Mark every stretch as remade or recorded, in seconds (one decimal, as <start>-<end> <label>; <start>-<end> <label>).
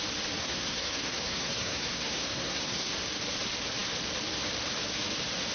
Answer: 0.0-0.4 recorded; 0.4-2.9 remade; 2.9-5.5 recorded